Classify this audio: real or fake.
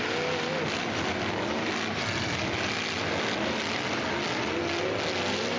real